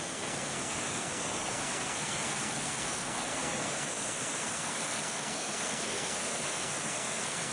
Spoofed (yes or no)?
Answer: yes